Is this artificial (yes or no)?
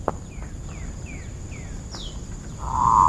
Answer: yes